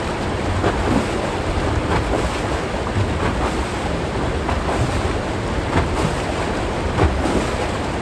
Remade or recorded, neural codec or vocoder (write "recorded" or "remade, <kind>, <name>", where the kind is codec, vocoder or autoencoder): recorded